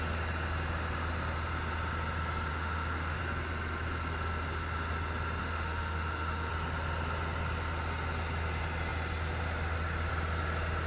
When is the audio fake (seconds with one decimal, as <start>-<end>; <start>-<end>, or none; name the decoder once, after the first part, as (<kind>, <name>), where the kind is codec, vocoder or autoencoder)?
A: 2.5-3.2 (autoencoder, DAC-VAE); 5.4-6.5